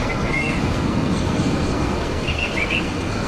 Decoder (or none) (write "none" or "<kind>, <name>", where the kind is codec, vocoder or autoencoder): codec, SNAC